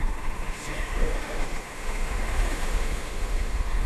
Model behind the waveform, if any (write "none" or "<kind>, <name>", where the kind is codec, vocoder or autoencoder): autoencoder, DAC-VAE